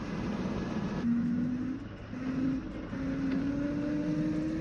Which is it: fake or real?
real